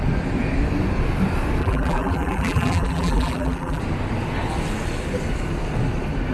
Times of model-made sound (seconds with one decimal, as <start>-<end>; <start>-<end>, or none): 1.6-3.8

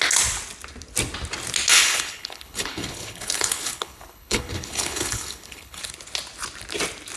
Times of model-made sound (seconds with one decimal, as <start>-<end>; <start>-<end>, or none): 1.7-5.8

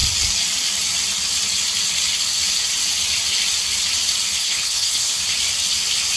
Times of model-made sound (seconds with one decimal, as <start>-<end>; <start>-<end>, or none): 4.4-5.2

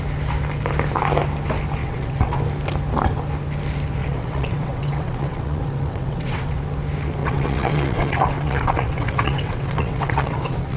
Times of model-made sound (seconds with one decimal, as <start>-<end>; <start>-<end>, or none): 1.8-2.4; 4.0-6.6; 7.2-10.8

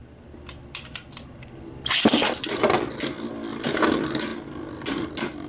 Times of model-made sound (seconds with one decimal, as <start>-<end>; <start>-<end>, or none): none

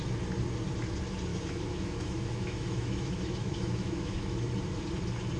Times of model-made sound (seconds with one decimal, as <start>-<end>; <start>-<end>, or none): 1.3-4.5

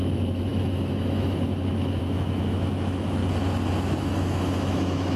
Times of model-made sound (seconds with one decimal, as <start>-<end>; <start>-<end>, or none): 0.0-3.2; 3.8-5.2